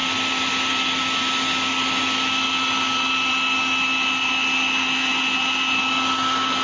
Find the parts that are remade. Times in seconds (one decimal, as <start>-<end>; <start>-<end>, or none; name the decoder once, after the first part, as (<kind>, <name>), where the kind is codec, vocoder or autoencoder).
none